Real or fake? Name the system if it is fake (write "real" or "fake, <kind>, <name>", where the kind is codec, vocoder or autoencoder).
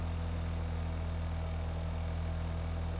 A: real